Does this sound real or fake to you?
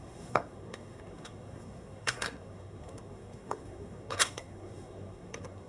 fake